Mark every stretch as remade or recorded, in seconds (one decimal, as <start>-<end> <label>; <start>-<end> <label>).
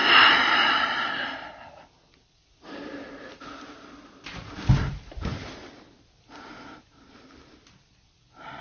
0.0-8.6 remade